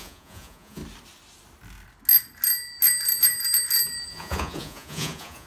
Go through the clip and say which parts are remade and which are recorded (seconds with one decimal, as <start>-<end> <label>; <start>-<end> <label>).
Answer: 0.0-0.8 remade; 0.8-4.1 recorded; 4.1-5.5 remade